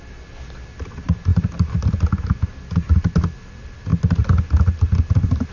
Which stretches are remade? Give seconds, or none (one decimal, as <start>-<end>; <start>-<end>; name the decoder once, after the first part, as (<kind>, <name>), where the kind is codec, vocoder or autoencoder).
none